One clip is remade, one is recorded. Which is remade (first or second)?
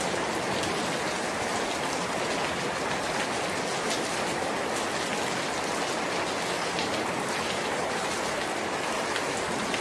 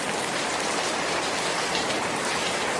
second